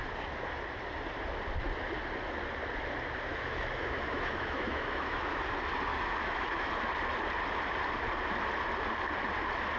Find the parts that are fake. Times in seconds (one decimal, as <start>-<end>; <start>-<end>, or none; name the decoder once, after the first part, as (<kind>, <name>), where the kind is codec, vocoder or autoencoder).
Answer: 3.3-5.4 (autoencoder, DAC-VAE); 5.9-6.7